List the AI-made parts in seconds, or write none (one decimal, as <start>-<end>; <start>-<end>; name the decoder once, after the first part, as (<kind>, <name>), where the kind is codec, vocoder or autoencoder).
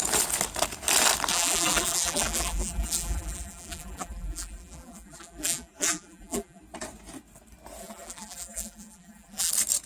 1.3-6.6 (vocoder, BigVGAN v2); 7.8-9.5